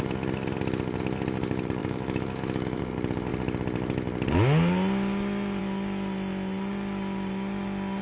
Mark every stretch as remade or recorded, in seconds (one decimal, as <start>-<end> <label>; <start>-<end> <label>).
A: 0.0-1.8 recorded; 1.8-2.8 remade; 2.8-8.0 recorded